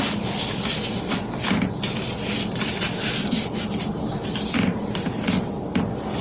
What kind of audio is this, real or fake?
real